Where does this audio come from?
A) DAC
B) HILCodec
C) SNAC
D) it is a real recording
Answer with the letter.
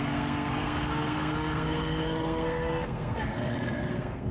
C